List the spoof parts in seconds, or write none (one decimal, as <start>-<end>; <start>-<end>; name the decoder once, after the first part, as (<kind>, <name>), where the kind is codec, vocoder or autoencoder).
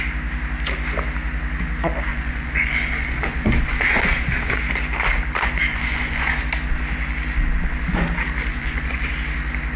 2.1-4.6 (vocoder, Vocos); 5.7-6.4; 8.5-9.1